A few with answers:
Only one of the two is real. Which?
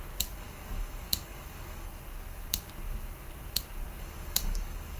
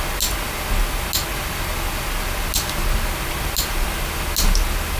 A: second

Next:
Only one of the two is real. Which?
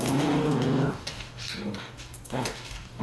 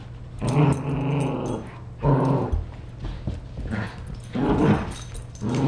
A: second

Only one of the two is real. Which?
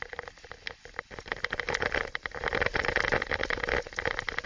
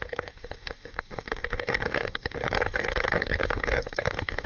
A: first